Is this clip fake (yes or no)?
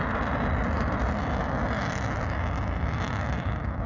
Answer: no